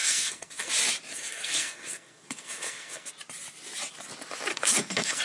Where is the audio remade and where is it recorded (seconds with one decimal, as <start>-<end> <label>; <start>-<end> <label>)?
0.0-0.7 remade; 0.7-1.1 recorded; 1.1-3.1 remade; 3.1-4.5 recorded; 4.5-5.2 remade